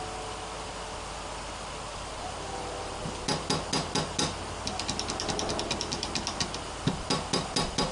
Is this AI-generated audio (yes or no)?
no